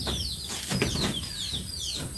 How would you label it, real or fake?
real